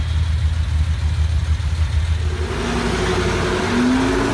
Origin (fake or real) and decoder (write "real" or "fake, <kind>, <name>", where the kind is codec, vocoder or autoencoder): real